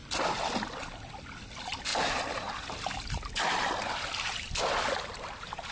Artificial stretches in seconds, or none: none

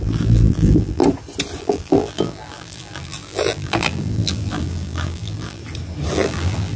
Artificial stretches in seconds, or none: 0.0-1.0 (vocoder, BigVGAN v2); 1.6-5.6; 6.1-6.8

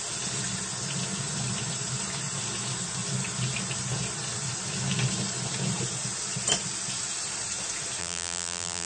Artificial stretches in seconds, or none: 8.0-8.9 (vocoder, BigVGAN v2)

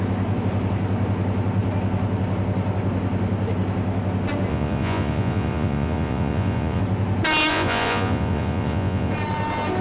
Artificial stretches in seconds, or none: 4.5-6.8 (vocoder, Vocos); 7.5-9.1

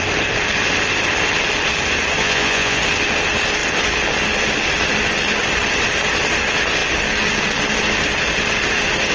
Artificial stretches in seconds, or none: 2.2-2.8 (vocoder, Vocos)

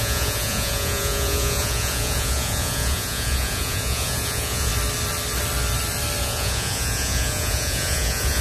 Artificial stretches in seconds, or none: 0.0-4.7 (vocoder, Vocos); 6.2-8.4

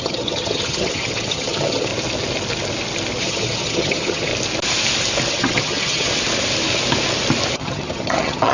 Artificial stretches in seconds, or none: 0.0-1.9 (vocoder, HiFi-GAN); 3.2-4.3; 5.3-6.1; 7.5-8.5